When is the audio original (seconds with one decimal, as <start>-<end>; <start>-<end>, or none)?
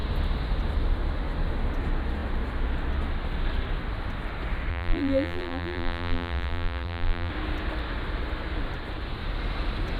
0.0-4.7; 7.3-10.0